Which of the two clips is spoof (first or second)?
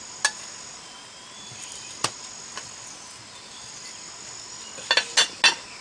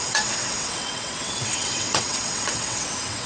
second